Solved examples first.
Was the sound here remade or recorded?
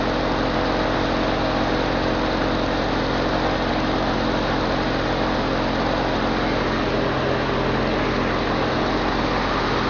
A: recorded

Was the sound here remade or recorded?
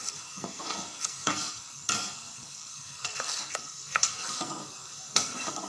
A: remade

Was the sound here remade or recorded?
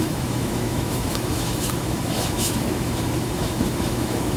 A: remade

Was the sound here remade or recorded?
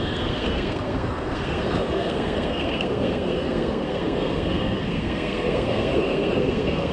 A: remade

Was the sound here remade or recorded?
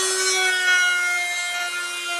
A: recorded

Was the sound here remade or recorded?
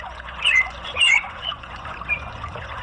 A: remade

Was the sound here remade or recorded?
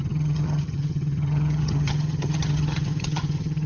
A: remade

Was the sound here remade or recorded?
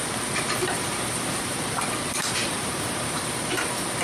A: remade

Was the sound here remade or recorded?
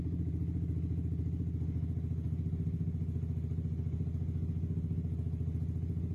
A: recorded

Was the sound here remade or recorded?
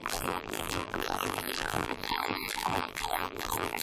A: remade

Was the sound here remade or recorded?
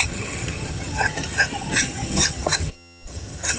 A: remade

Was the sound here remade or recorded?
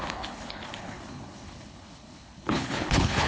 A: remade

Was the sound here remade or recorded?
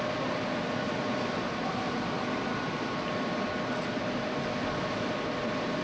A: recorded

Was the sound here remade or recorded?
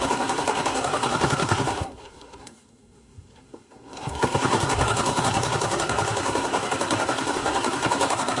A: remade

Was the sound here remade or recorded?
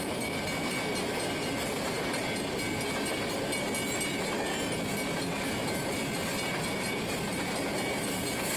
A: recorded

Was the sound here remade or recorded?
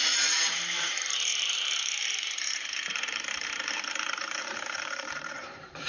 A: remade